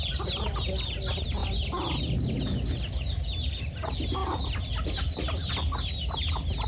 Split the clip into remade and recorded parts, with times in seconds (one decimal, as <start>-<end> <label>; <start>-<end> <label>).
0.0-4.2 recorded; 4.2-5.2 remade; 5.2-6.7 recorded